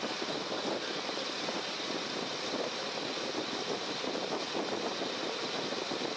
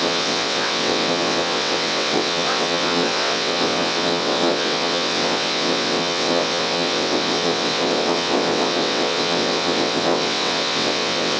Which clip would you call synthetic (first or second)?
second